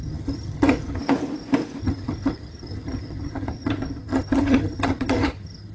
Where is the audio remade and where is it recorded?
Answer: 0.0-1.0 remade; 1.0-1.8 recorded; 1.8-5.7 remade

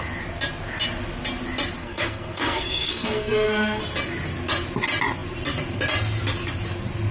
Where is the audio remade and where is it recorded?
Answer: 0.0-1.8 recorded; 1.8-3.8 remade; 3.8-7.1 recorded

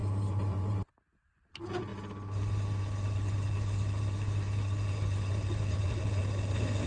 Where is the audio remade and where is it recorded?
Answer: 0.0-1.0 remade; 1.0-6.9 recorded

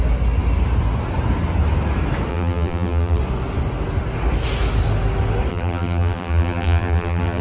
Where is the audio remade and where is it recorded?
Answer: 0.0-2.3 recorded; 2.3-3.2 remade; 3.2-5.5 recorded; 5.5-7.4 remade

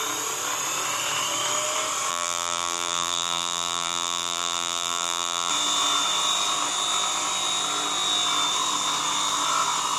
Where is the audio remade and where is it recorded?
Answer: 0.0-2.1 recorded; 2.1-5.5 remade; 5.5-10.0 recorded